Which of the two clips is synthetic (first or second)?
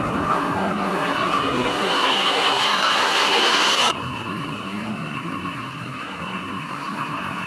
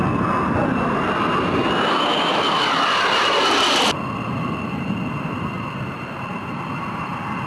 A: first